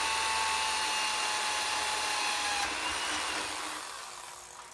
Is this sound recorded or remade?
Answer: recorded